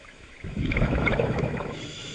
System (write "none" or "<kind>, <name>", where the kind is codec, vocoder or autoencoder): autoencoder, DAC-VAE